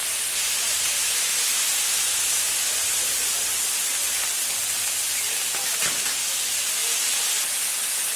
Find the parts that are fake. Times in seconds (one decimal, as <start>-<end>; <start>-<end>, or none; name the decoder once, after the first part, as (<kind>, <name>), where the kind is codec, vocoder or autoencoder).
none